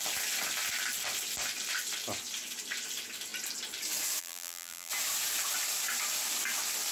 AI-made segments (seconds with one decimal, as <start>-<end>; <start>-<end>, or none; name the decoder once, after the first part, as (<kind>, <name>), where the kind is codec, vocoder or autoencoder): 4.2-4.9 (vocoder, BigVGAN v2)